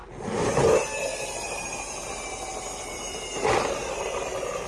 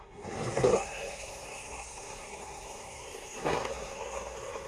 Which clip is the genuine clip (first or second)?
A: first